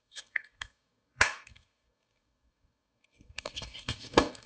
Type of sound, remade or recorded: remade